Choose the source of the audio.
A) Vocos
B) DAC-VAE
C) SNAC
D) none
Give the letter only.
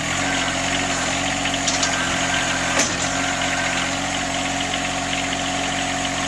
D